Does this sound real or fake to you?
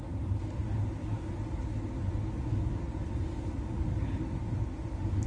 real